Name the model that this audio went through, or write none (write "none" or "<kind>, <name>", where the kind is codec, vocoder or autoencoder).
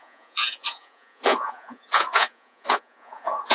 vocoder, Vocos